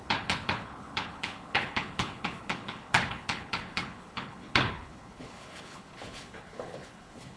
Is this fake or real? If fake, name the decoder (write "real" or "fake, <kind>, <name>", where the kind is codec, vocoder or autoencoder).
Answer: fake, codec, HILCodec